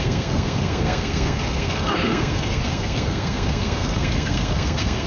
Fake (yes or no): yes